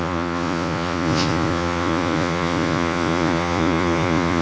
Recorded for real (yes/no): no